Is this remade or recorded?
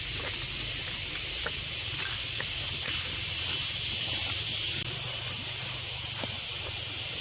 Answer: remade